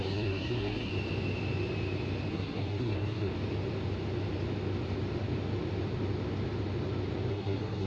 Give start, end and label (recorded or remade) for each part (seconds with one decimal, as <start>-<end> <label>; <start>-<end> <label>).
0.0-0.9 remade; 0.9-2.3 recorded; 2.3-3.3 remade; 3.3-7.3 recorded; 7.3-7.9 remade